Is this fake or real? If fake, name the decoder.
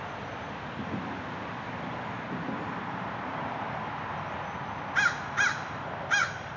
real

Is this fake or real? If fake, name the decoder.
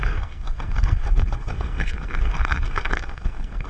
fake, codec, SNAC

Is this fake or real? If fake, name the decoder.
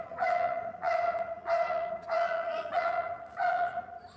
fake, vocoder, Vocos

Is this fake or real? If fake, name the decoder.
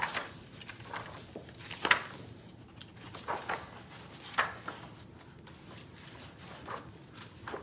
real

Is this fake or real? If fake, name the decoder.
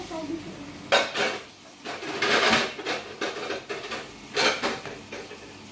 real